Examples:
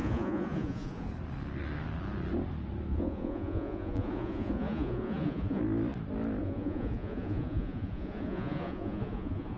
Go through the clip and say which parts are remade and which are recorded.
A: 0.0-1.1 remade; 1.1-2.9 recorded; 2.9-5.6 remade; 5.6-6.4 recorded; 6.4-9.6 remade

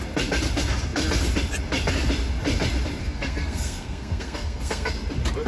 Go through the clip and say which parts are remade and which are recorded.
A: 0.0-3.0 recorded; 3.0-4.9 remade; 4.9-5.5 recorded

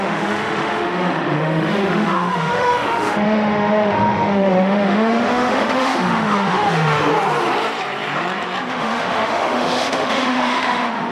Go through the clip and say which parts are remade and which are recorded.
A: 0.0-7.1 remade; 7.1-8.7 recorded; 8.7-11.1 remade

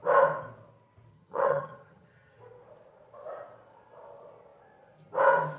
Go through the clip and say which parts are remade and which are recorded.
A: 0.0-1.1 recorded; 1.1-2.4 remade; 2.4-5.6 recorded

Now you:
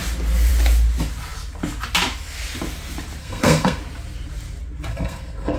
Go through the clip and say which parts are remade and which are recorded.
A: 0.0-3.2 recorded; 3.2-3.8 remade; 3.8-4.9 recorded; 4.9-5.6 remade

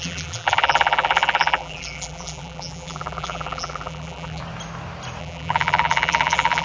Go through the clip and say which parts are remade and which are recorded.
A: 0.0-4.4 remade; 4.4-5.2 recorded; 5.2-6.6 remade